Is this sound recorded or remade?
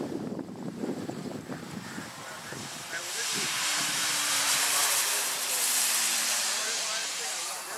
remade